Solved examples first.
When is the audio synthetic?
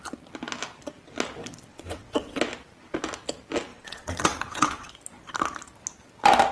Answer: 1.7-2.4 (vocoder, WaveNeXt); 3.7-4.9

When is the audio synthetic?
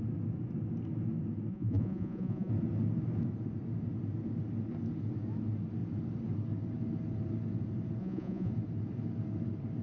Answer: 1.5-2.5 (vocoder, Vocos); 8.0-8.5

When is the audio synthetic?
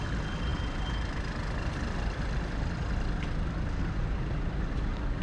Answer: none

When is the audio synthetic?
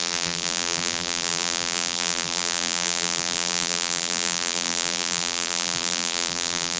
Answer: 0.0-6.8 (vocoder, BigVGAN v2)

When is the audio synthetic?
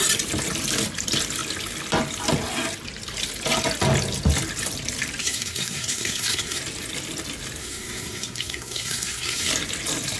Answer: 5.2-6.6 (codec, SNAC); 7.6-9.5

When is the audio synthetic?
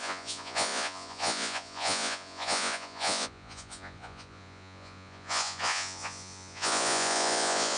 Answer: 0.0-7.8 (vocoder, Vocos)